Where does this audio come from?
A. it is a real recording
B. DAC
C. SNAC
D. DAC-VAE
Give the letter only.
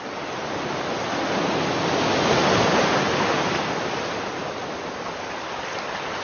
A